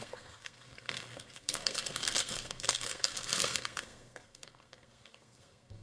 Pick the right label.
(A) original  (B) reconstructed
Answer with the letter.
B